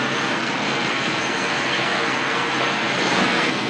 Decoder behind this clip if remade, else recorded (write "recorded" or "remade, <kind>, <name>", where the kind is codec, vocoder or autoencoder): remade, codec, SNAC